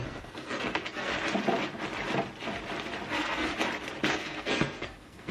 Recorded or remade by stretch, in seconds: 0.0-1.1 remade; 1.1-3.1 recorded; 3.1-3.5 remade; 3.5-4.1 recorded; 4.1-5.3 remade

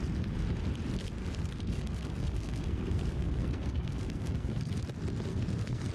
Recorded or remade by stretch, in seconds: 0.0-1.2 recorded; 1.2-4.7 remade; 4.7-5.3 recorded; 5.3-5.9 remade

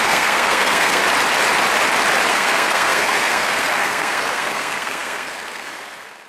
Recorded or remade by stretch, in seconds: 0.0-1.0 remade; 1.0-2.3 recorded; 2.3-6.3 remade

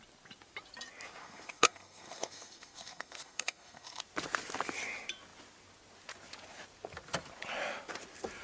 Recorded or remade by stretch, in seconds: 0.0-1.2 recorded; 1.2-4.0 remade; 4.0-8.4 recorded